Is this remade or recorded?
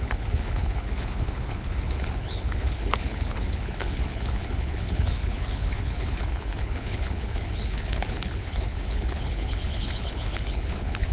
remade